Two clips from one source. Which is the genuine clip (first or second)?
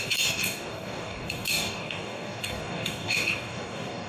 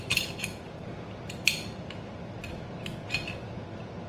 second